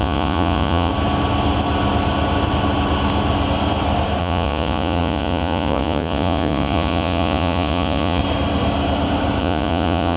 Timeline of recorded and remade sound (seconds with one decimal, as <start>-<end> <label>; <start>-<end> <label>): 0.0-0.9 remade; 0.9-4.2 recorded; 4.2-8.2 remade; 8.2-9.4 recorded; 9.4-10.2 remade